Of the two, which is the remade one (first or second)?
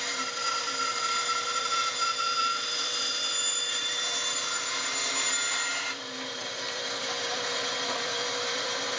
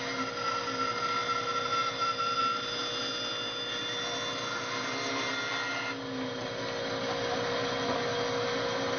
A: first